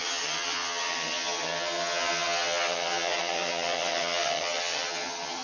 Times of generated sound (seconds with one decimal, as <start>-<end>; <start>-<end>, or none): 0.0-5.4